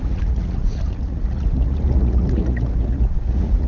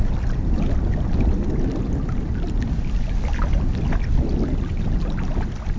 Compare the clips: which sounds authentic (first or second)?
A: second